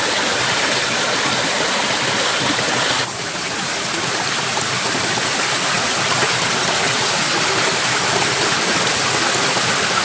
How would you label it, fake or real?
real